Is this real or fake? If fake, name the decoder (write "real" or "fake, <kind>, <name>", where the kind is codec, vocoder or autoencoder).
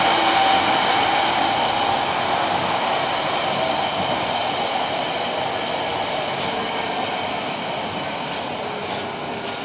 real